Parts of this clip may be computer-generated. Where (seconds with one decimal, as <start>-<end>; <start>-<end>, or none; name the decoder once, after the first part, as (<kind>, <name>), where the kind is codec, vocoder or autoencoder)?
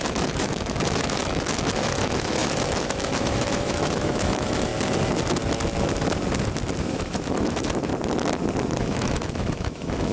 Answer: 0.0-4.7 (autoencoder, DAC-VAE); 6.8-7.9; 8.8-10.1